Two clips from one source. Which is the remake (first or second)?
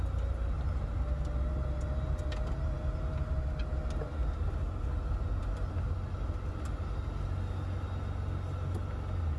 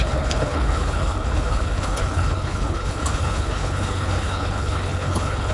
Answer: second